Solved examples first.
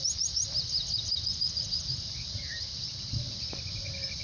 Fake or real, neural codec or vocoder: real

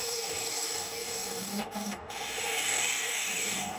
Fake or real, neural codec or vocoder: fake, codec, DAC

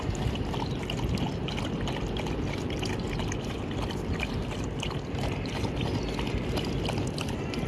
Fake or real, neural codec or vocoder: real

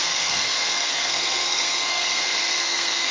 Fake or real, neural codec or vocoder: fake, codec, SNAC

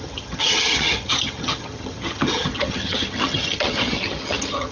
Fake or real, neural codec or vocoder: fake, vocoder, HiFi-GAN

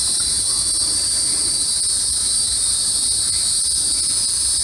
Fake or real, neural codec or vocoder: fake, vocoder, BigVGAN v2